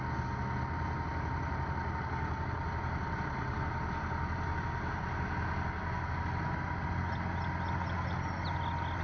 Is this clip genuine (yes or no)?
yes